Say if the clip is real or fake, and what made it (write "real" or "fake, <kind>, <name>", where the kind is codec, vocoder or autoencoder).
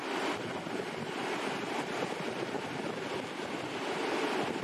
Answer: real